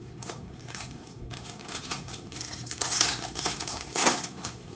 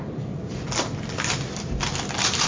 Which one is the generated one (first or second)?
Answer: first